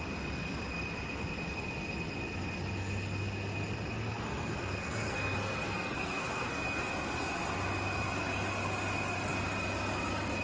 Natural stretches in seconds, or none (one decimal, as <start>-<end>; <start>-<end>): 0.0-4.1; 6.8-10.4